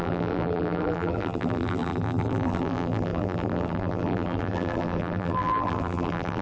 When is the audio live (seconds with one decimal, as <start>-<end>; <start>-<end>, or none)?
none